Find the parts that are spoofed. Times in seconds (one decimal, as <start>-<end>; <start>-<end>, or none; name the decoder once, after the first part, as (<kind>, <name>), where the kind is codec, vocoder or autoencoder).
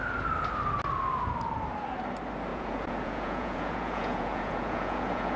2.5-5.4 (vocoder, Vocos)